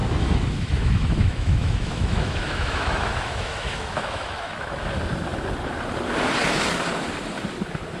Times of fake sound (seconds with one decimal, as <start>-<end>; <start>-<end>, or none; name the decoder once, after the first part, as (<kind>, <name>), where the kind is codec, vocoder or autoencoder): 0.0-4.7 (autoencoder, DAC-VAE)